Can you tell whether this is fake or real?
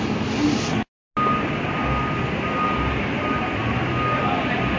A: real